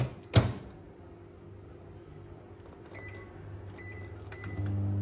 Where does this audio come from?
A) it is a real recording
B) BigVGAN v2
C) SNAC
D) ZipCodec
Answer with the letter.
A